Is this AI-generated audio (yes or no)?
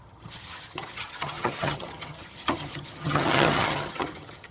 yes